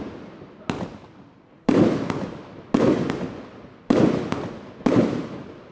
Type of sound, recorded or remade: recorded